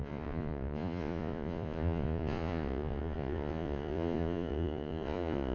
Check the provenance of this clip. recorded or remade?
remade